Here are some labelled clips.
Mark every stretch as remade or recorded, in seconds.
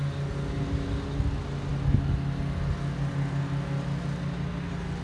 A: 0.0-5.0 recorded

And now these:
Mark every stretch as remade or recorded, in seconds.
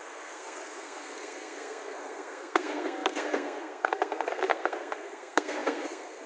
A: 0.0-6.3 remade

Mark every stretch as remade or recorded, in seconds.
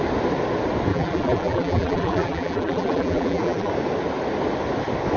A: 0.0-0.9 recorded; 0.9-3.7 remade; 3.7-5.2 recorded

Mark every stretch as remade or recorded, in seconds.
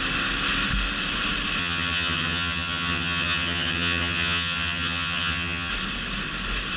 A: 0.0-1.6 recorded; 1.6-5.7 remade; 5.7-6.8 recorded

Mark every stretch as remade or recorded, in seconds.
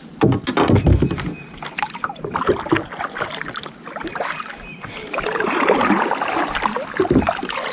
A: 0.0-7.7 recorded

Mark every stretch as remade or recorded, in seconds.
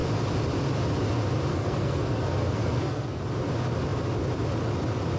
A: 0.0-1.5 recorded; 1.5-3.2 remade; 3.2-5.2 recorded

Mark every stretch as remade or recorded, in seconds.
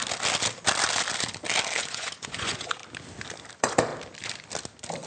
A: 0.0-1.8 recorded; 1.8-2.8 remade; 2.8-3.5 recorded; 3.5-3.9 remade; 3.9-5.1 recorded